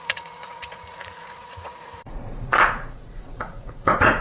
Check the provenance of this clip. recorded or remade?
remade